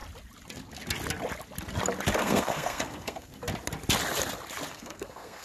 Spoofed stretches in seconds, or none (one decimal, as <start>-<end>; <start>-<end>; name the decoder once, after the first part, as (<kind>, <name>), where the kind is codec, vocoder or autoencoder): 2.2-3.3 (codec, SNAC); 4.7-5.4